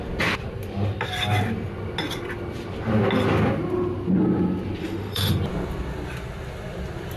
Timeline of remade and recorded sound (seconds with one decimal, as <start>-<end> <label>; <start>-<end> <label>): 0.0-4.8 recorded; 4.8-5.3 remade; 5.3-7.2 recorded